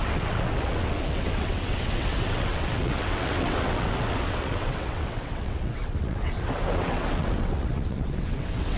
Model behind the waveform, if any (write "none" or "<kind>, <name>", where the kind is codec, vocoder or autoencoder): vocoder, WaveNeXt